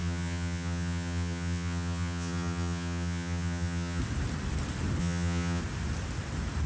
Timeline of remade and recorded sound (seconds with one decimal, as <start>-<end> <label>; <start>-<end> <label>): 0.0-4.0 remade; 4.0-5.0 recorded; 5.0-5.6 remade; 5.6-6.7 recorded